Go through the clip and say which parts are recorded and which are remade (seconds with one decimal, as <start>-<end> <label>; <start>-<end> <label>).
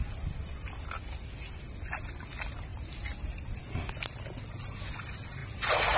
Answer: 0.0-6.0 recorded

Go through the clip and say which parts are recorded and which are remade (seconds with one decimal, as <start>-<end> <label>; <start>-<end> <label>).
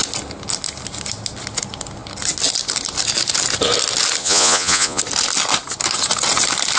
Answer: 0.0-4.2 recorded; 4.2-5.0 remade; 5.0-6.8 recorded